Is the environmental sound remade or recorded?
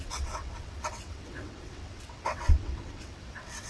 remade